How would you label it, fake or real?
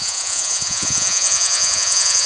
fake